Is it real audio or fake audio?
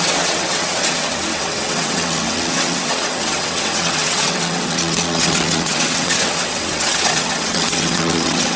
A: fake